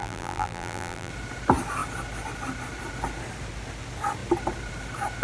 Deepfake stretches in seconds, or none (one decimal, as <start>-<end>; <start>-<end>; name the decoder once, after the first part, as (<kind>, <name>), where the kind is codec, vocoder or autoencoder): 0.0-1.1 (vocoder, BigVGAN v2)